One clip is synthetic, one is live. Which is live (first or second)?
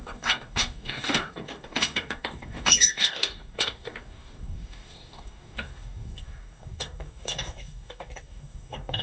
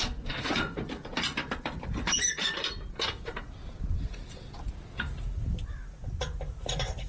second